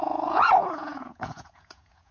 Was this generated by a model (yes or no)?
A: yes